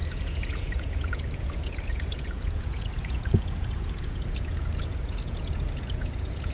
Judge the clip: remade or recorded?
remade